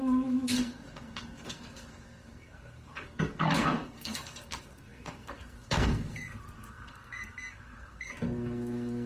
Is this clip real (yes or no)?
no